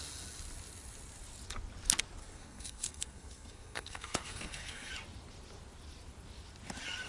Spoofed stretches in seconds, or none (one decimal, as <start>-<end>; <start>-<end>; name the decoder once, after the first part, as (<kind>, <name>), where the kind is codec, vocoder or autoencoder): 2.2-4.9 (codec, SNAC)